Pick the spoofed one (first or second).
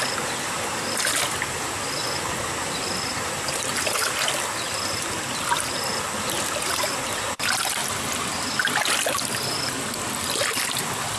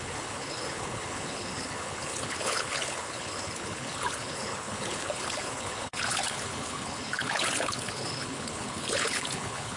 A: second